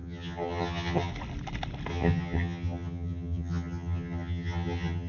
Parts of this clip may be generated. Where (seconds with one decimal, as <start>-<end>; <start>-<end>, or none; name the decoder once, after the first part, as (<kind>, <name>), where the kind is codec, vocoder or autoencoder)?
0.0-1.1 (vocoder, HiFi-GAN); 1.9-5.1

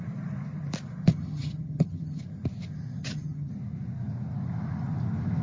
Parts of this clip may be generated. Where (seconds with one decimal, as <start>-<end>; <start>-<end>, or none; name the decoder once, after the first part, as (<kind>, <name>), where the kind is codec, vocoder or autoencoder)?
1.1-2.2 (vocoder, HiFi-GAN); 3.0-3.5

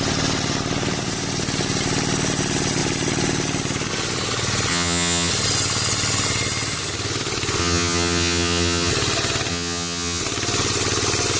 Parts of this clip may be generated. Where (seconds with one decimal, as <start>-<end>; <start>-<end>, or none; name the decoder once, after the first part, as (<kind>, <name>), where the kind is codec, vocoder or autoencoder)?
4.7-5.3 (vocoder, HiFi-GAN); 7.6-8.9; 9.5-10.2

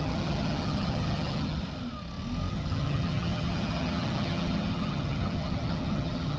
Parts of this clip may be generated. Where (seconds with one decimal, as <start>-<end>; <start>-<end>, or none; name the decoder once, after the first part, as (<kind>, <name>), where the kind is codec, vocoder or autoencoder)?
0.0-1.6 (vocoder, HiFi-GAN); 2.5-6.4

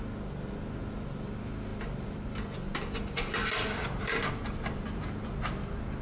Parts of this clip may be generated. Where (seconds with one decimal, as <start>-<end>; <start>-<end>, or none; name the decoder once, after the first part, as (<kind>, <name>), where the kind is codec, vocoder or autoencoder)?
none

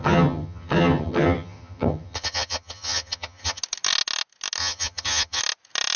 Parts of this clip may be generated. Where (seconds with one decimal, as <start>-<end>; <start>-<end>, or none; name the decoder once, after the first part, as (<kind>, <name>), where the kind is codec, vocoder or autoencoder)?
0.0-3.6 (vocoder, HiFi-GAN); 4.6-5.4